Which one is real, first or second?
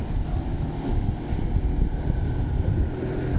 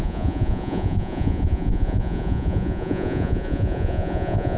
first